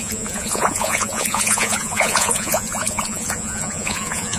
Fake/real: fake